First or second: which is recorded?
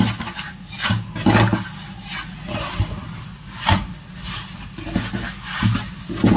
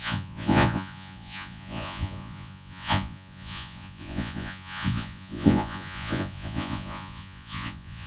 first